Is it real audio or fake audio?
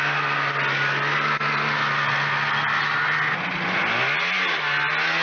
real